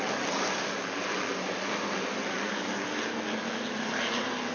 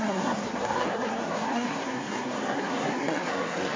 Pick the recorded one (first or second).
first